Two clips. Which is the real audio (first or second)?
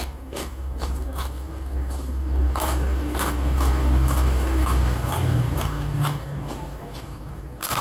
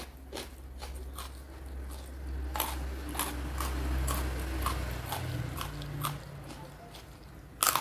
second